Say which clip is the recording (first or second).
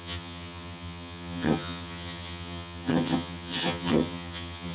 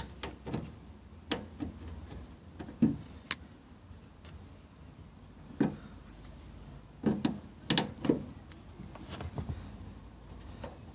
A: second